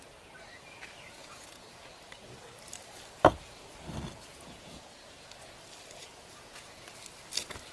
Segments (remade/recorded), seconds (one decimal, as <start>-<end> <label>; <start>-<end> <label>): 0.0-1.2 recorded; 1.2-1.9 remade; 1.9-4.3 recorded; 4.3-4.9 remade; 4.9-6.0 recorded; 6.0-6.9 remade; 6.9-7.7 recorded